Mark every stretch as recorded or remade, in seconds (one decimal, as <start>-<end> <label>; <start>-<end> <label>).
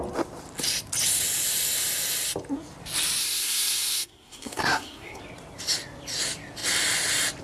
0.0-3.2 recorded; 3.2-5.2 remade; 5.2-7.4 recorded